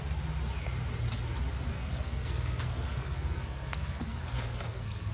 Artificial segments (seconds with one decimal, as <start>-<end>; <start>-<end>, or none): 1.7-5.1